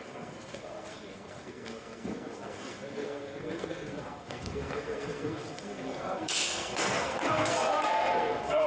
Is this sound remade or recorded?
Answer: remade